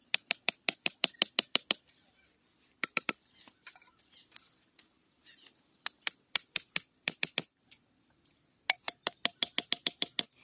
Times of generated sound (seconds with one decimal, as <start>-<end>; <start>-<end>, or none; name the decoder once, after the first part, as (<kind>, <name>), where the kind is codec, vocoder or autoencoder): 0.0-4.0 (vocoder, BigVGAN v2)